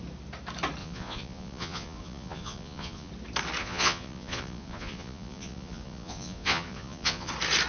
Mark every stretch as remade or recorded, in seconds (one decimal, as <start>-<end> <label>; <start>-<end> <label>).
0.0-0.8 recorded; 0.8-3.1 remade; 3.1-3.6 recorded; 3.6-7.3 remade; 7.3-7.7 recorded